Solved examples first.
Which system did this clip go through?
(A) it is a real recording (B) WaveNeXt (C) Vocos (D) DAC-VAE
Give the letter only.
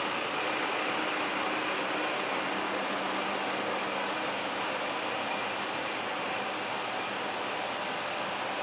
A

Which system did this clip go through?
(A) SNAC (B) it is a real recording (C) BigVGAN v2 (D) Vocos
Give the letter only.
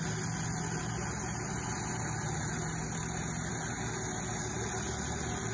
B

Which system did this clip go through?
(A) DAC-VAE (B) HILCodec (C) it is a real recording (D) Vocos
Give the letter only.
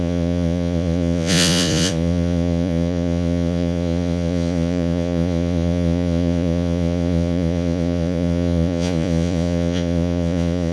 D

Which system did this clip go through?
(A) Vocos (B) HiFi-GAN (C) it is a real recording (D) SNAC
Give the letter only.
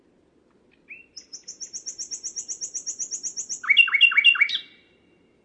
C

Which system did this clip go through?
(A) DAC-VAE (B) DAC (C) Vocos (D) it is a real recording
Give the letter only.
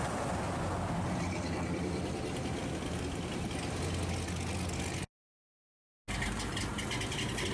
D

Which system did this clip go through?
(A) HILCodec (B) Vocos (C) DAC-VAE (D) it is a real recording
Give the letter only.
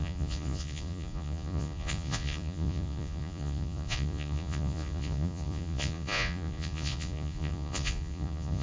B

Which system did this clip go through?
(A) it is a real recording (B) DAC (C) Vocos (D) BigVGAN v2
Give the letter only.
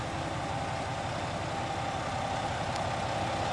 A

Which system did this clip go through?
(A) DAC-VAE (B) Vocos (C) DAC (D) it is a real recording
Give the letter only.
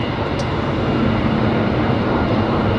D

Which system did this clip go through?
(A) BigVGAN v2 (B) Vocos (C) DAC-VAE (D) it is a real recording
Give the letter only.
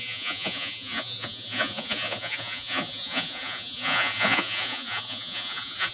B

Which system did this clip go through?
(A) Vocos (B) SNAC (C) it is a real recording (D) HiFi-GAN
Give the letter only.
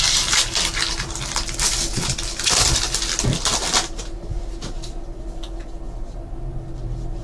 C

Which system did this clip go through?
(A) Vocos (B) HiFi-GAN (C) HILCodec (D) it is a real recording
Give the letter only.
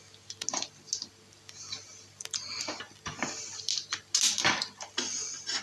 D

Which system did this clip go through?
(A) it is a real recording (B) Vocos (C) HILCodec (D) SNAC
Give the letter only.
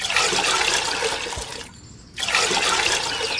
A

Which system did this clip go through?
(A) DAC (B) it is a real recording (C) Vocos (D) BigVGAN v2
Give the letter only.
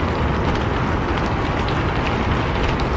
B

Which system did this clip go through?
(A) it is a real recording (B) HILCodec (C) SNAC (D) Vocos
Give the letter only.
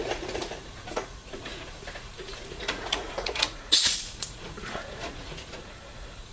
D